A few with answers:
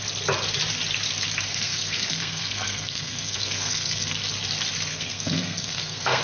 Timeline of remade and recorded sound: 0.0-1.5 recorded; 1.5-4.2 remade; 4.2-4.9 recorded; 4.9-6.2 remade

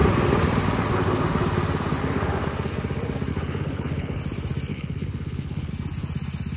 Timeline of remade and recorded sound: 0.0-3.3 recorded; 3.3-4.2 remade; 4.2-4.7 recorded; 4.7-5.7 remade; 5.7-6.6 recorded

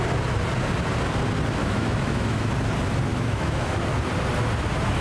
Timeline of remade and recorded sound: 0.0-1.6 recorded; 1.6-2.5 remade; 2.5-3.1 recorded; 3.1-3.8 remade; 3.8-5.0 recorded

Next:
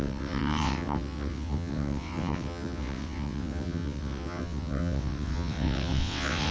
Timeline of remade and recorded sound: 0.0-6.5 remade

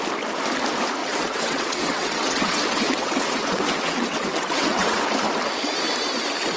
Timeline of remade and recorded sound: 0.0-1.0 recorded; 1.0-5.0 remade; 5.0-6.6 recorded

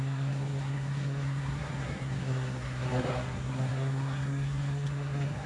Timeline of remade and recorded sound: 0.0-5.5 remade

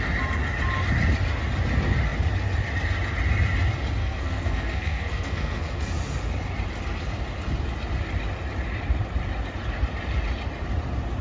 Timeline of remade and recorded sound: 0.0-4.0 recorded; 4.0-5.8 remade; 5.8-11.2 recorded

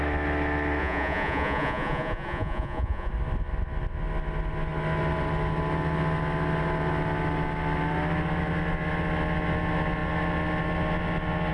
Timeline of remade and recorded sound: 0.0-0.8 recorded; 0.8-3.1 remade; 3.1-11.5 recorded